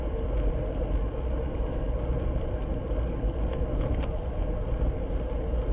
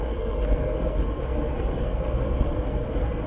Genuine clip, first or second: first